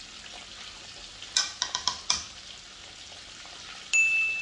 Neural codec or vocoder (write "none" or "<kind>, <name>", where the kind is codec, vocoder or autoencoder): none